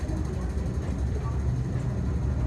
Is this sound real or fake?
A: real